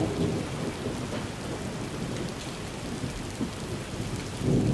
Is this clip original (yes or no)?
yes